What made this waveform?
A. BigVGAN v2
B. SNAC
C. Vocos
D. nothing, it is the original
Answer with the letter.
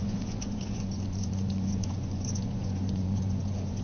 C